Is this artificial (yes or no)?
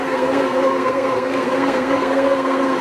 yes